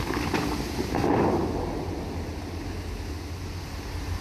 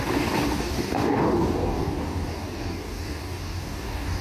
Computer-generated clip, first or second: second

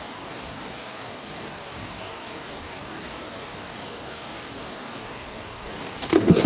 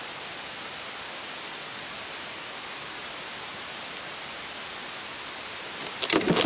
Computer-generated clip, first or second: first